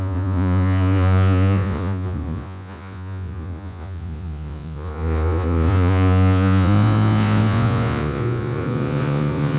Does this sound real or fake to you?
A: fake